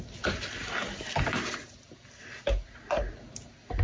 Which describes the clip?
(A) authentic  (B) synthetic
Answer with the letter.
A